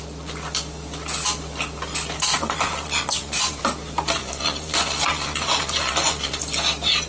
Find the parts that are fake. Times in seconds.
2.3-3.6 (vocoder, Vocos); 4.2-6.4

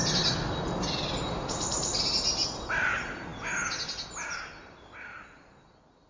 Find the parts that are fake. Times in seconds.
none

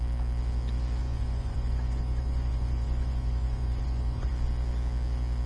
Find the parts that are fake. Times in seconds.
1.0-4.3 (vocoder, Vocos)